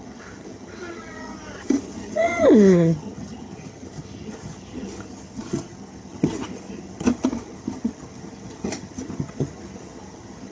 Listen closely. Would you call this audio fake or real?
fake